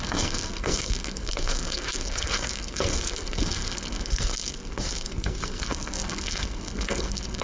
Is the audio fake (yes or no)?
yes